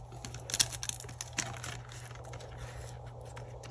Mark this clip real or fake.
real